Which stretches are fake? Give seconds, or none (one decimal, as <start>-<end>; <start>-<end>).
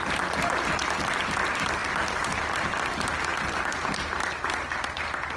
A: none